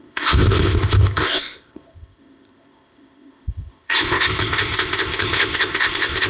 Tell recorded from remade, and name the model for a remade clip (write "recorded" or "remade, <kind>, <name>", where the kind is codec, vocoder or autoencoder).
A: remade, codec, ZipCodec